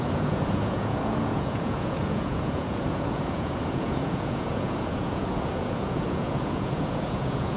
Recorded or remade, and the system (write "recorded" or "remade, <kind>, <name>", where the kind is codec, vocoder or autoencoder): remade, vocoder, Vocos